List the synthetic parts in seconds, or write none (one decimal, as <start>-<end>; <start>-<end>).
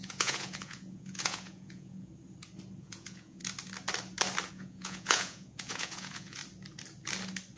0.0-2.1; 2.8-3.4; 4.5-6.4